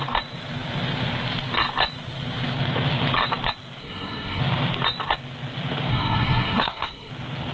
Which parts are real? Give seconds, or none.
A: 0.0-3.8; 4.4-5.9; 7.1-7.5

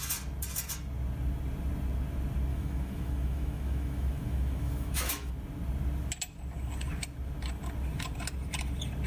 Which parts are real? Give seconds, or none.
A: 0.0-2.5; 5.3-9.1

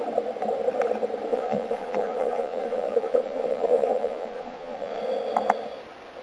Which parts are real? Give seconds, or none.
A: 0.0-1.3; 5.0-6.2